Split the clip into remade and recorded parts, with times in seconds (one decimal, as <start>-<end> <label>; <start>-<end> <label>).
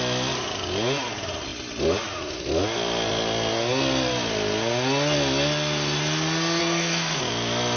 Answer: 0.0-6.6 recorded; 6.6-7.2 remade; 7.2-7.8 recorded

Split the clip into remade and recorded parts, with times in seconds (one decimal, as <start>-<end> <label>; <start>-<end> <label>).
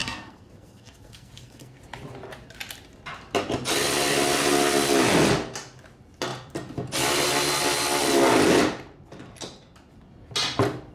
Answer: 0.0-1.8 remade; 1.8-10.9 recorded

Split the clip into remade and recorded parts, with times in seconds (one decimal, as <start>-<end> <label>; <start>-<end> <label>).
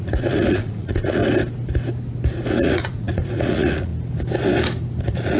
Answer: 0.0-1.2 remade; 1.2-2.5 recorded; 2.5-3.9 remade; 3.9-5.0 recorded; 5.0-5.4 remade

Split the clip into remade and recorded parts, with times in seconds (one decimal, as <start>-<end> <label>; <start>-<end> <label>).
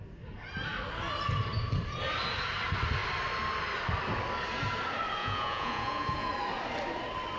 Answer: 0.0-5.2 recorded; 5.2-6.3 remade; 6.3-7.4 recorded